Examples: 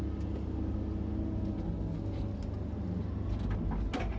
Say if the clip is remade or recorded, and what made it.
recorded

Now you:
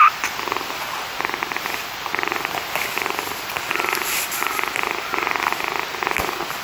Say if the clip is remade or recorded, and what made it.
recorded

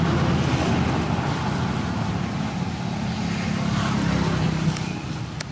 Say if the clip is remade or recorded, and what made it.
recorded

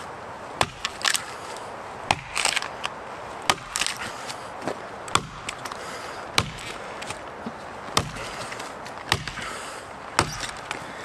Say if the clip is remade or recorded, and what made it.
recorded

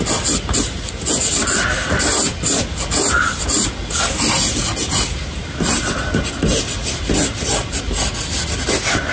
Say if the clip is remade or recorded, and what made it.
recorded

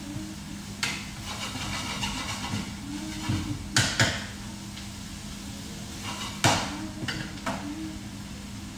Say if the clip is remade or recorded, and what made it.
recorded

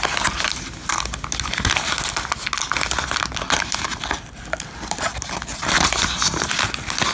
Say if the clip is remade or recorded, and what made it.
recorded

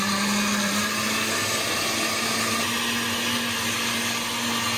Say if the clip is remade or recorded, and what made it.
recorded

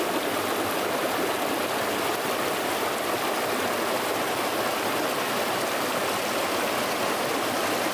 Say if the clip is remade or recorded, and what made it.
recorded